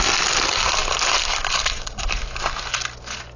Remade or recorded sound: recorded